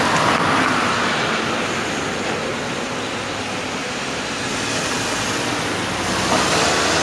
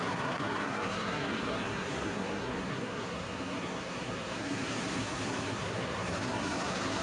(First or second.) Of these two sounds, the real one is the first